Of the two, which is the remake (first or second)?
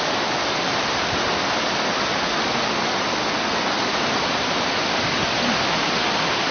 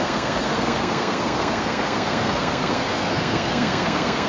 second